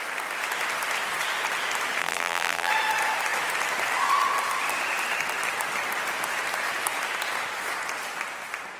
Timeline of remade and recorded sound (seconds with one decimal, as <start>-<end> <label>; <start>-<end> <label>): 0.0-2.0 recorded; 2.0-2.7 remade; 2.7-8.8 recorded

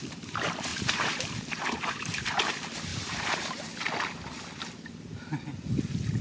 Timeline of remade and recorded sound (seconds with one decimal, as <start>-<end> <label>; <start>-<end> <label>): 0.0-0.7 recorded; 0.7-2.5 remade; 2.5-2.9 recorded; 2.9-3.6 remade; 3.6-6.2 recorded